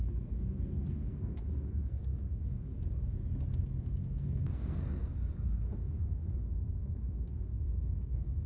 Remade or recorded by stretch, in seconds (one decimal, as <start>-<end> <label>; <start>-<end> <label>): 0.0-3.0 remade; 3.0-3.8 recorded; 3.8-8.5 remade